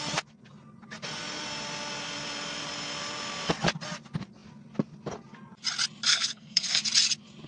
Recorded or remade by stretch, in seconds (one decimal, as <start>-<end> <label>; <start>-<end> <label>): 0.0-6.1 recorded; 6.1-6.8 remade; 6.8-7.5 recorded